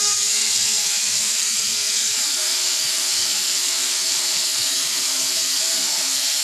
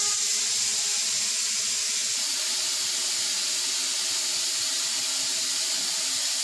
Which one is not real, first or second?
first